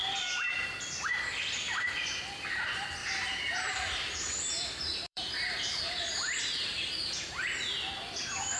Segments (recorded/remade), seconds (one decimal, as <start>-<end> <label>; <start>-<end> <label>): 0.0-3.0 recorded; 3.0-6.4 remade; 6.4-8.6 recorded